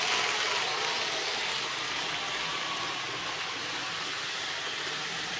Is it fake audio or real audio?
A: real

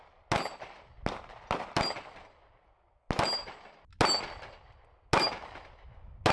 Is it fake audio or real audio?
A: real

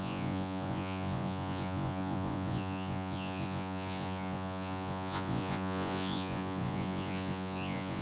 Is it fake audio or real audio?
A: fake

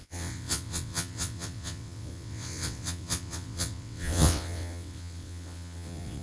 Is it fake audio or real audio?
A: fake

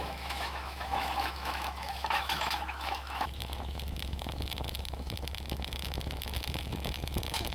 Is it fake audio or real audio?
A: fake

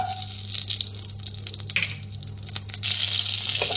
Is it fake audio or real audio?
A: real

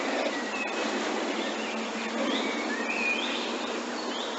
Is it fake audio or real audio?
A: real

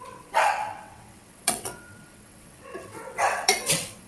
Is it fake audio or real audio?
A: fake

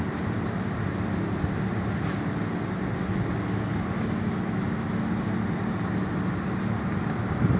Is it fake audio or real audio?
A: real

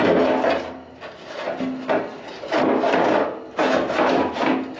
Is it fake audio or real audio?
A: real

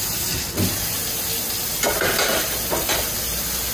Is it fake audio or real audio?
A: real